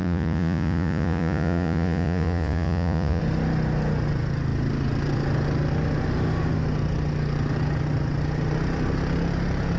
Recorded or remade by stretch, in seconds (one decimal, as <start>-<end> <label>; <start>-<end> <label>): 0.0-3.2 remade; 3.2-9.8 recorded